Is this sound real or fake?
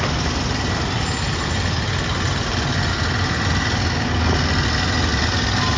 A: real